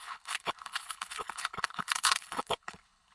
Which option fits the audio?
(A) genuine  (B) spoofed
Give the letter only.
B